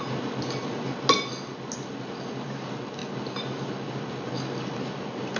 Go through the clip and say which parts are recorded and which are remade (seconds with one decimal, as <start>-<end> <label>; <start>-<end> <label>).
0.0-5.4 recorded